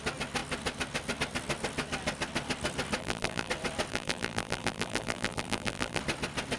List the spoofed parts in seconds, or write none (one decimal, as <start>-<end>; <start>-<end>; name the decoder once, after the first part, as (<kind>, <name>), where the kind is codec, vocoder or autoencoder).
3.0-3.5 (vocoder, BigVGAN v2); 3.9-6.0